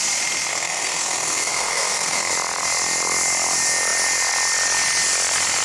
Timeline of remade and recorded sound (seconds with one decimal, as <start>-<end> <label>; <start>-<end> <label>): 0.0-0.5 recorded; 0.5-2.3 remade; 2.3-5.6 recorded

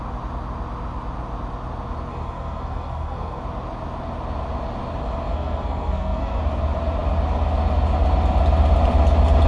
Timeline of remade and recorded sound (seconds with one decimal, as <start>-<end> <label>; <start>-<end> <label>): 0.0-2.1 recorded; 2.1-3.4 remade; 3.4-5.3 recorded; 5.3-6.4 remade; 6.4-9.5 recorded

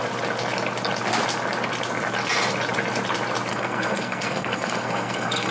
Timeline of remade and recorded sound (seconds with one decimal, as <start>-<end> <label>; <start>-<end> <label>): 0.0-3.5 recorded; 3.5-5.5 remade

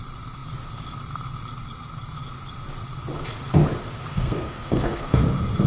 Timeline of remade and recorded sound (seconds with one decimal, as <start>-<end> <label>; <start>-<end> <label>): 0.0-4.1 recorded; 4.1-5.2 remade; 5.2-5.7 recorded

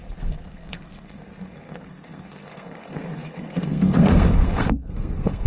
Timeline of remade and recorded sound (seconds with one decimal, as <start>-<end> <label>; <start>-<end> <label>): 0.0-5.5 remade